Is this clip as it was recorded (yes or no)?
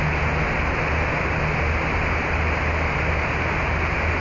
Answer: yes